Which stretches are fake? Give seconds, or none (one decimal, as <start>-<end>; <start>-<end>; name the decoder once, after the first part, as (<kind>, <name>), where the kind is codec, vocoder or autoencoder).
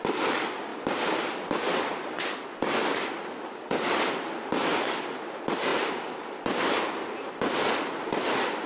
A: none